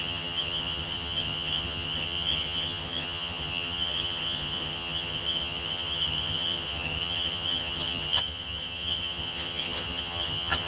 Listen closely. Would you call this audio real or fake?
fake